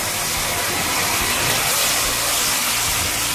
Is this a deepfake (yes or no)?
no